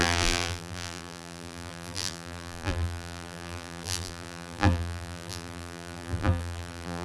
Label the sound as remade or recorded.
remade